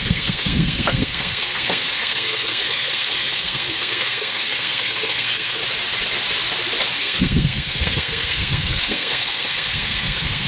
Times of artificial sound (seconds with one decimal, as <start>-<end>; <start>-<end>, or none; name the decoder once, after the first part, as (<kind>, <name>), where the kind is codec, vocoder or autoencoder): 0.0-5.6 (codec, SNAC); 7.0-10.5